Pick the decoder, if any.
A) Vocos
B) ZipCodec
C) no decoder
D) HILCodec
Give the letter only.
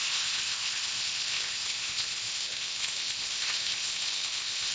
B